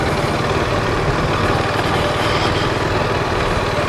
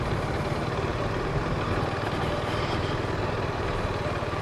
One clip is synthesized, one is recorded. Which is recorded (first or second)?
first